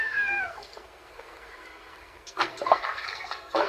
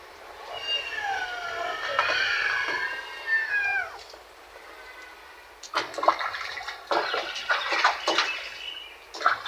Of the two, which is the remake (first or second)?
first